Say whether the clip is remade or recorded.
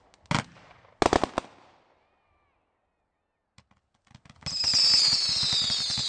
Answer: recorded